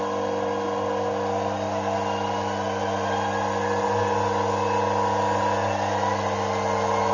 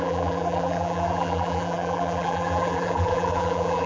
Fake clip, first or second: second